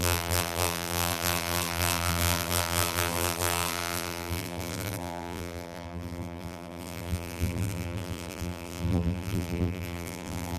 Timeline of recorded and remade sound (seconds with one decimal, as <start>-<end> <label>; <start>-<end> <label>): 0.0-10.6 remade